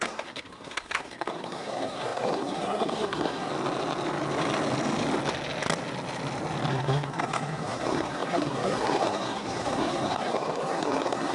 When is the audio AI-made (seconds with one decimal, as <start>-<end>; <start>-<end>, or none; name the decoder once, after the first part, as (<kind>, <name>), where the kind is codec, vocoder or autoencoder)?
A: 0.0-3.5 (codec, SNAC); 6.7-11.3